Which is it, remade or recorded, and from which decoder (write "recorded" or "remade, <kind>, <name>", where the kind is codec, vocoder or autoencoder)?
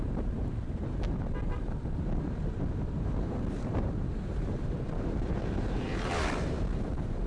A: remade, vocoder, BigVGAN v2